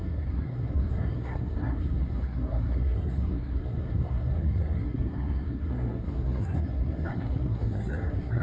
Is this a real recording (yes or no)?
no